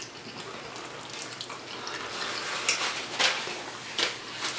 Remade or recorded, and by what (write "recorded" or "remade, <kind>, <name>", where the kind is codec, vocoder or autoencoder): recorded